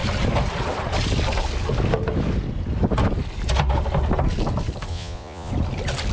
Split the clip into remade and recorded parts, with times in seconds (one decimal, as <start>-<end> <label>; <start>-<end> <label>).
0.0-4.9 recorded; 4.9-5.5 remade; 5.5-6.1 recorded